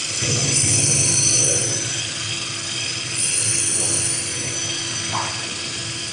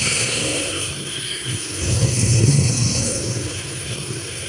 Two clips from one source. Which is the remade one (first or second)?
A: second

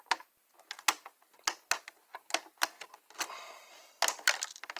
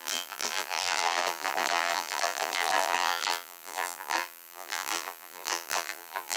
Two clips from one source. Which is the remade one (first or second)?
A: second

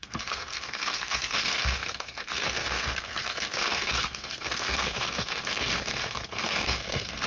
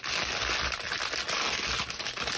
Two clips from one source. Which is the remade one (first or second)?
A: first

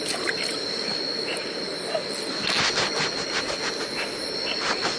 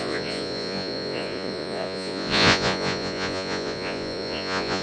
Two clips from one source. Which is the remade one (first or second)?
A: second